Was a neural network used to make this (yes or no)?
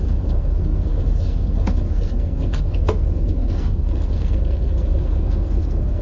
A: yes